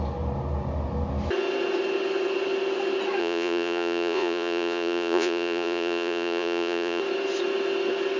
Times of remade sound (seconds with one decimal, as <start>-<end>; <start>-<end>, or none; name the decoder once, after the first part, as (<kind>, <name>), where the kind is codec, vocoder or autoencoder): 3.2-7.0 (vocoder, Vocos)